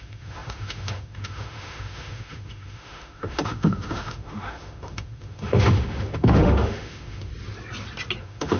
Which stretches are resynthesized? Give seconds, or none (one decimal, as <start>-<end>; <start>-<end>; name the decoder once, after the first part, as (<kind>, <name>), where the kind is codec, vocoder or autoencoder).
0.0-7.3 (autoencoder, DAC-VAE); 8.2-8.6